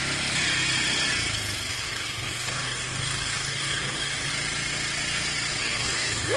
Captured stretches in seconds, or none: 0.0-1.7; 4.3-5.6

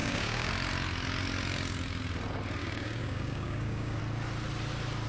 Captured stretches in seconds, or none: 0.5-2.6; 4.0-5.1

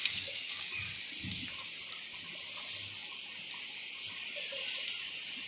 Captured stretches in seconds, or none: 0.7-5.5